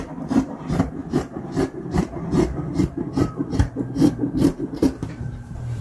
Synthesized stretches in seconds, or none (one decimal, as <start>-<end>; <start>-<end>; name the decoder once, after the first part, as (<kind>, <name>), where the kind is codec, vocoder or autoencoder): 0.0-5.8 (vocoder, BigVGAN v2)